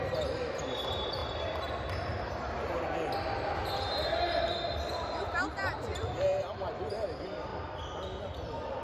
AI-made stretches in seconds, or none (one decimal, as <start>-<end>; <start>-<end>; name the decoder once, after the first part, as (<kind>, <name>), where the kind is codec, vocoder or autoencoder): 0.0-1.2 (vocoder, BigVGAN v2); 4.4-8.8